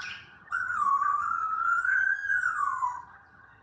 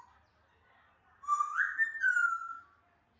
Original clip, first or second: second